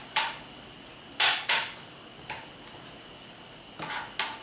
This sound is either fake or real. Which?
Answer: real